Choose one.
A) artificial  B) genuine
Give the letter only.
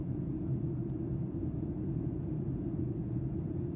A